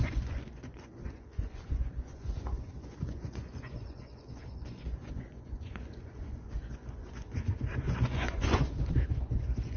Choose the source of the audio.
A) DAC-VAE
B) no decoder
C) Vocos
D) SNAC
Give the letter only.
C